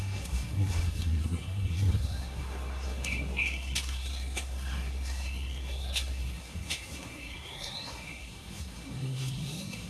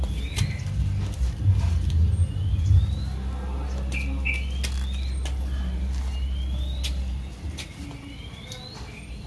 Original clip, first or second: second